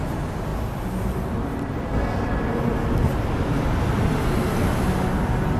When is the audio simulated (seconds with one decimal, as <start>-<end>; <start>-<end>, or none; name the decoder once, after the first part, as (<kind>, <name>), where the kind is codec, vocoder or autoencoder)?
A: none